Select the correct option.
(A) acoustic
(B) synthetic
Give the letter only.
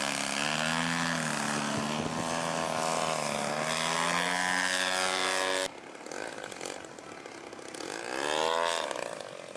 A